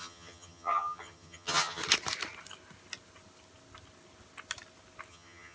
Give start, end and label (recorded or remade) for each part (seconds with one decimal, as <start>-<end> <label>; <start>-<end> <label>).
0.0-1.8 remade; 1.8-5.1 recorded; 5.1-5.5 remade